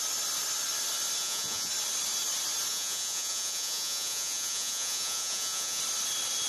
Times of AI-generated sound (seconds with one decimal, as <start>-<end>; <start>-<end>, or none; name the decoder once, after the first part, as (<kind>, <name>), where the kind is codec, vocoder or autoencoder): 1.2-1.7 (vocoder, Vocos); 2.7-5.8